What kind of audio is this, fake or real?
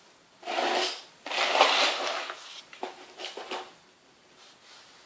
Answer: real